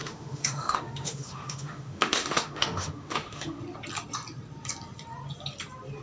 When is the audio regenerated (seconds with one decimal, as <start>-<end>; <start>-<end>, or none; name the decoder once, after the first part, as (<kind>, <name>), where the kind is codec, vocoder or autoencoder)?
0.0-3.6 (autoencoder, DAC-VAE)